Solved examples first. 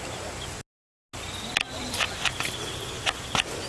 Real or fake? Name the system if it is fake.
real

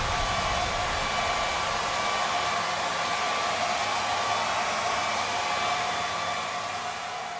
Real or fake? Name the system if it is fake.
real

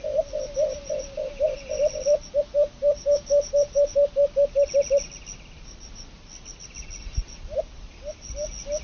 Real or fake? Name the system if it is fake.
real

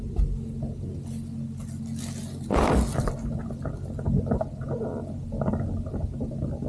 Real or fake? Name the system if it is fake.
real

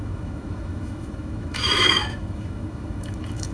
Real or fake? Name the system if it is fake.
fake, autoencoder, DAC-VAE